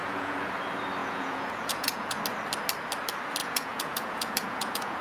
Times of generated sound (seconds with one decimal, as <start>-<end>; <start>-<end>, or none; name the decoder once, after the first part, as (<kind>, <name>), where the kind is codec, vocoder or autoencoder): 0.0-0.5 (vocoder, Vocos); 1.0-2.2; 3.4-5.0